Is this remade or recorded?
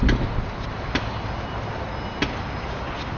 recorded